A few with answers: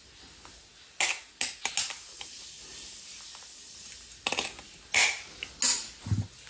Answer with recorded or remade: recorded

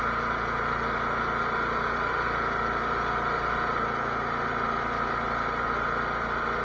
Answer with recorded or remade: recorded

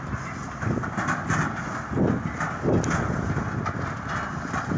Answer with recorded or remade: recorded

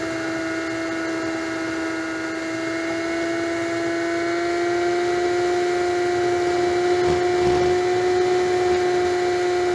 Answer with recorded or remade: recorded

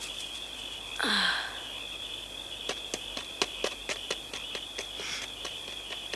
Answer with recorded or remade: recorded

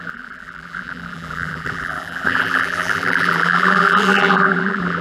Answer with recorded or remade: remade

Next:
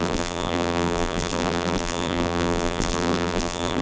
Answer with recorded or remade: remade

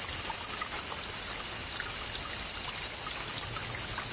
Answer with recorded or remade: recorded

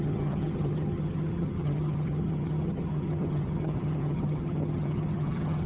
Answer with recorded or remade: remade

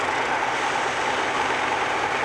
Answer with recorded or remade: recorded